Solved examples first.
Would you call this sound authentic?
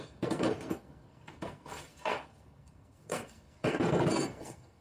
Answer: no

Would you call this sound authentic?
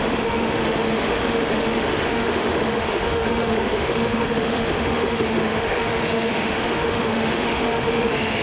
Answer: no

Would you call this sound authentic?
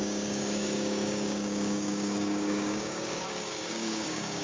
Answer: no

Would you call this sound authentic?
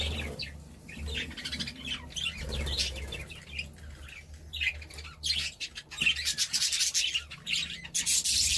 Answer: yes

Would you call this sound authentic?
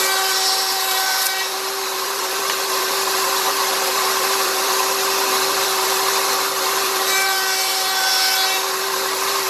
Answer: no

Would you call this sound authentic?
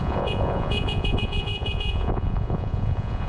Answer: no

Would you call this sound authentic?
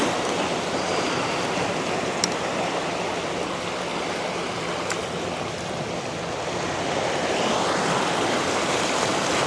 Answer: yes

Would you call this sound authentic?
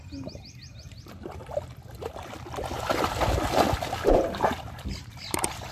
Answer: yes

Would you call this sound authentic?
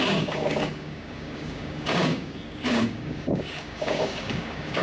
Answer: no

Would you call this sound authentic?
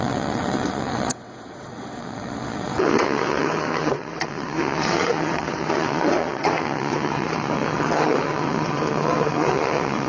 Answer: no